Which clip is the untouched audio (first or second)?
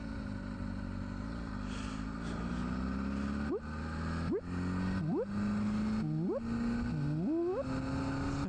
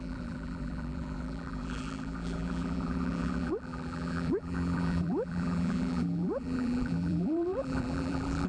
first